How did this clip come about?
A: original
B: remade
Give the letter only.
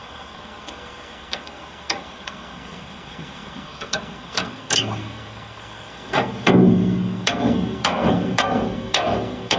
B